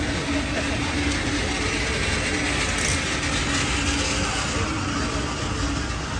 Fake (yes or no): no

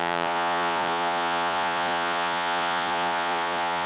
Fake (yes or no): yes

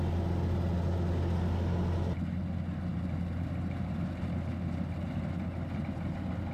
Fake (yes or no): no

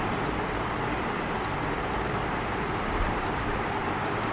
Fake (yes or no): yes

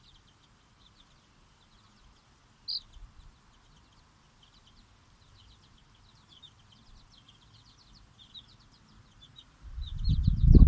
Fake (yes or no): no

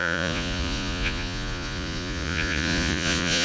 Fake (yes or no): yes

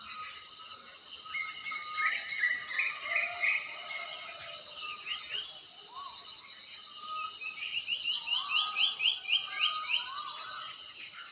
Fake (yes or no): no